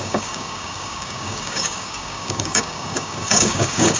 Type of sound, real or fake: fake